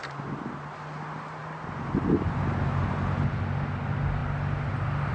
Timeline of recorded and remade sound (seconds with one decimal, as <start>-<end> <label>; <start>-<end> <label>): 0.0-5.1 recorded